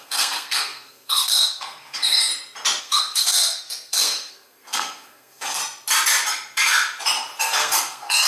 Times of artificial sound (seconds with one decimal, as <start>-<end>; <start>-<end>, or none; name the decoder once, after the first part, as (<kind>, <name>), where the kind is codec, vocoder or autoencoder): 0.0-2.3 (codec, SNAC); 2.8-5.6; 7.4-8.3